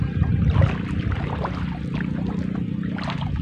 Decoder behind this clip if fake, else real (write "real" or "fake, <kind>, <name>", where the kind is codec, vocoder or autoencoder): real